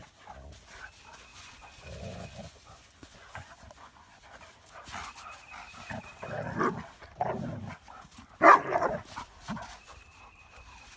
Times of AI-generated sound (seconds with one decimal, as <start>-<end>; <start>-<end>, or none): 1.3-4.4